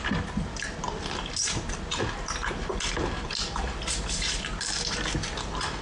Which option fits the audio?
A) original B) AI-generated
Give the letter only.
A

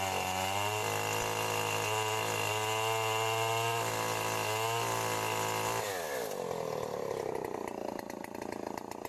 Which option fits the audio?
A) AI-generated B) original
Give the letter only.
B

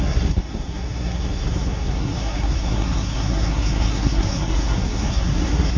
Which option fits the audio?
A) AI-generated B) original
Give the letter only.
A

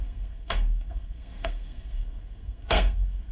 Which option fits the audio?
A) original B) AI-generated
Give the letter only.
B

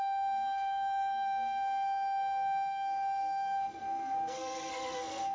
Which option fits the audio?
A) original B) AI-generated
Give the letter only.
B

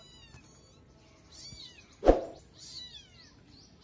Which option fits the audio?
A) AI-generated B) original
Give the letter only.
B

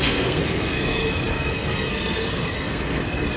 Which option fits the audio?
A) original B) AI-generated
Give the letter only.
B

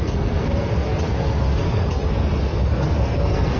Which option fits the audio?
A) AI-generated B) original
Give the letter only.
A